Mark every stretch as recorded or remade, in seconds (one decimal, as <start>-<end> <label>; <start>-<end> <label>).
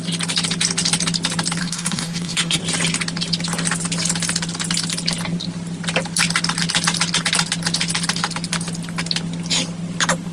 0.0-1.6 recorded; 1.6-2.6 remade; 2.6-10.3 recorded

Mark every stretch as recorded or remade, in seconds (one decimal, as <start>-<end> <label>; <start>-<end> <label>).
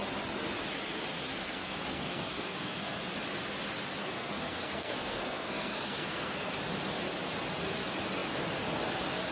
0.0-1.3 recorded; 1.3-3.0 remade; 3.0-4.0 recorded; 4.0-6.6 remade; 6.6-9.3 recorded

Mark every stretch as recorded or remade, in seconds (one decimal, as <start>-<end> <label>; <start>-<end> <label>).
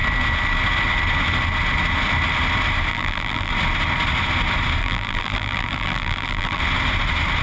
0.0-2.9 recorded; 2.9-3.5 remade; 3.5-4.8 recorded; 4.8-6.6 remade; 6.6-7.4 recorded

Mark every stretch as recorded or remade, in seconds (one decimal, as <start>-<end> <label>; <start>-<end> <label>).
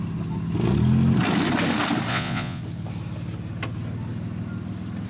0.0-2.1 recorded; 2.1-2.6 remade; 2.6-5.1 recorded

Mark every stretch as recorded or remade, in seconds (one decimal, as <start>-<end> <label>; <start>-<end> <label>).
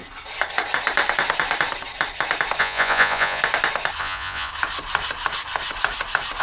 0.0-2.6 recorded; 2.6-3.4 remade; 3.4-4.0 recorded; 4.0-4.5 remade; 4.5-6.4 recorded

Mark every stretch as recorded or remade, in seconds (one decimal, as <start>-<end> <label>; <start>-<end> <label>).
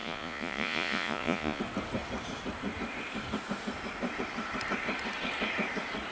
0.0-1.6 remade; 1.6-6.1 recorded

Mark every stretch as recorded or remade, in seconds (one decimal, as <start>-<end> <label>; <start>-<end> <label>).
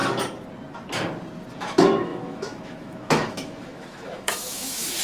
0.0-1.6 recorded; 1.6-5.0 remade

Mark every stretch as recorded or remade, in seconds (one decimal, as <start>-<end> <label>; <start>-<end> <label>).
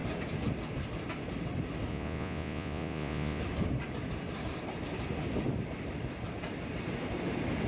0.0-1.9 recorded; 1.9-3.4 remade; 3.4-7.7 recorded